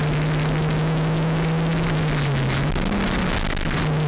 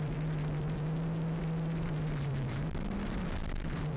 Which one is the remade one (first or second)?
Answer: second